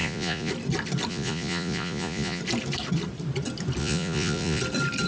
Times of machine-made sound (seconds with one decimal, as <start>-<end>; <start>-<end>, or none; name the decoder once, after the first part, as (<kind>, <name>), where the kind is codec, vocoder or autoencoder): 0.0-0.5 (vocoder, Vocos); 1.1-2.4; 3.8-4.6